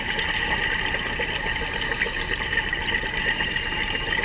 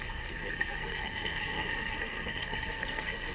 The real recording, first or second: first